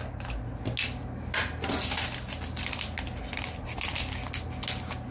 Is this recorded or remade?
recorded